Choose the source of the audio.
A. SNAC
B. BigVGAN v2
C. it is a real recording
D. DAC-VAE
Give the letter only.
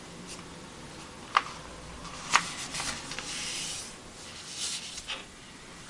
C